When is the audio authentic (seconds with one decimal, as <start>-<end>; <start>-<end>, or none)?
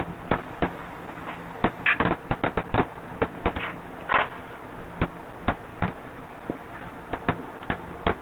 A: 0.0-2.6; 3.4-5.7; 6.9-8.2